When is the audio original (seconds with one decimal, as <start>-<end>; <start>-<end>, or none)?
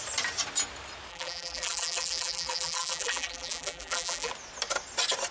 0.0-1.1; 4.3-5.3